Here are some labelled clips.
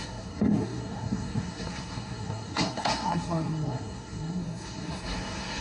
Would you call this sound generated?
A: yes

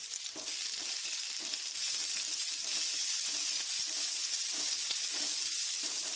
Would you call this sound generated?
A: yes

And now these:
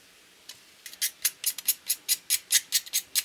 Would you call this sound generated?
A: no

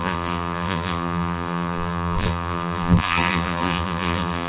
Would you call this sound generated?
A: yes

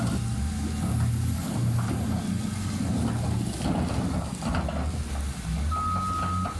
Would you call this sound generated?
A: no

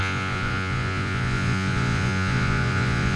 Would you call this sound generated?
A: yes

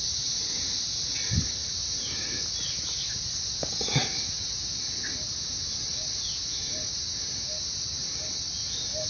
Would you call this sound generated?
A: no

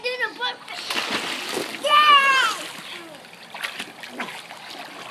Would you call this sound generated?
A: no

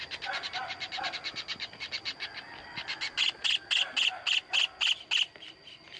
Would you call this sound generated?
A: no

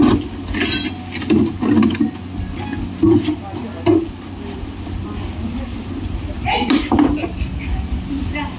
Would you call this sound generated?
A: no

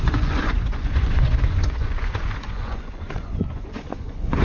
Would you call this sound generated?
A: yes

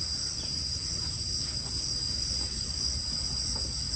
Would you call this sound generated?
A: no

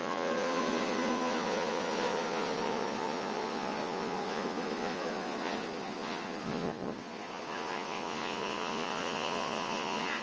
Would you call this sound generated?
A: yes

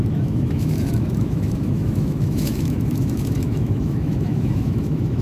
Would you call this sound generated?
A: yes